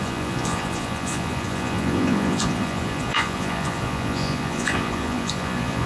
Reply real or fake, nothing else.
fake